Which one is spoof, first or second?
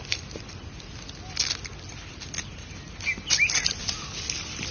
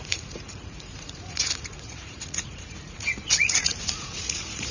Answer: second